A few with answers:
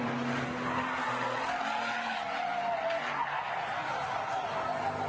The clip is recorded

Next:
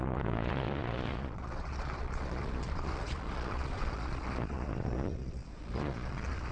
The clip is remade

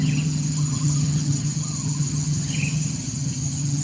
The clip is remade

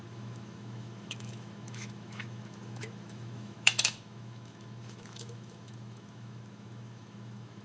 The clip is remade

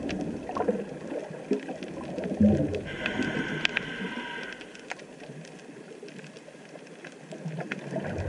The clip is recorded